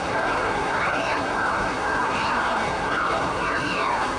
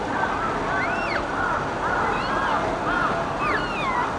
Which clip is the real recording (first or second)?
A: second